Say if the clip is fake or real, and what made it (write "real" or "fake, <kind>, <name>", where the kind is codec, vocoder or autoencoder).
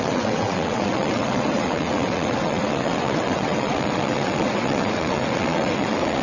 fake, vocoder, WaveNeXt